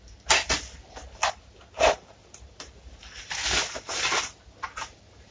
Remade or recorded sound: recorded